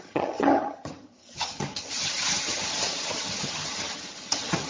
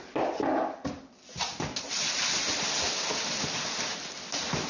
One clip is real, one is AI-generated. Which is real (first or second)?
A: second